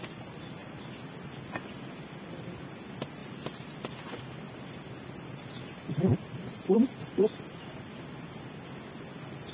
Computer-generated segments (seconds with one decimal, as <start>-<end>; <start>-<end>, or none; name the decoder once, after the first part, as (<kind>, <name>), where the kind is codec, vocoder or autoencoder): none